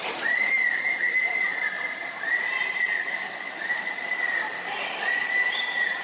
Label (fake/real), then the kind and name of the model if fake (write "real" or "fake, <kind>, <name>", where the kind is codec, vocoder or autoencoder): real